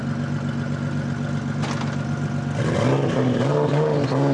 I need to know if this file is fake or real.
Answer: real